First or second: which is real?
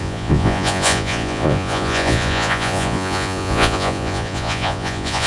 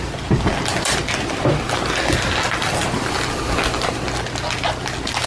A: second